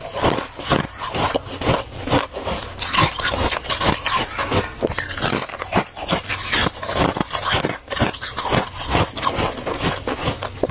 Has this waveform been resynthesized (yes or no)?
no